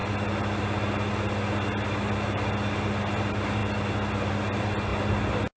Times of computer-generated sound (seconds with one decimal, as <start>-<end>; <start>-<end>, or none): none